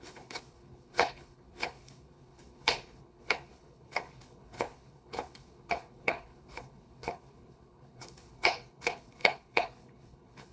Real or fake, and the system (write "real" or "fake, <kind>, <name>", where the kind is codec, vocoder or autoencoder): fake, codec, HILCodec